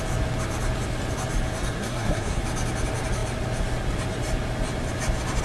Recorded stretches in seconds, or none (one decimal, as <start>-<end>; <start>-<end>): 0.0-1.8; 2.4-5.4